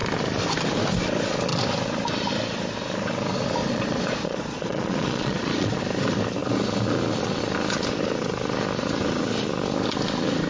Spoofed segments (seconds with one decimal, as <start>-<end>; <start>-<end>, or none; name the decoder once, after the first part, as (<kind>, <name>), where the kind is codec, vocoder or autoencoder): 3.6-5.8 (vocoder, Vocos)